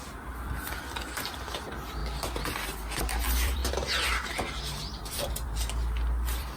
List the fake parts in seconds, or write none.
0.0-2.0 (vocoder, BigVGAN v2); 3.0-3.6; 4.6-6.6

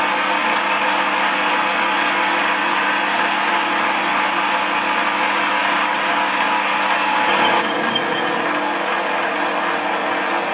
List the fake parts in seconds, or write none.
none

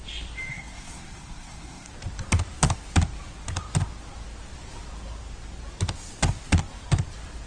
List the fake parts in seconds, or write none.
0.5-1.9 (codec, SNAC)

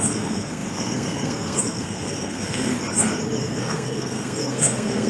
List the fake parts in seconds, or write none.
0.0-2.7 (codec, SNAC); 3.4-5.1